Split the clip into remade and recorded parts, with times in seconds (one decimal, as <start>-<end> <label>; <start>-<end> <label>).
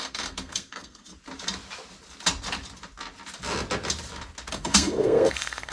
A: 0.0-1.1 remade; 1.1-4.5 recorded; 4.5-5.7 remade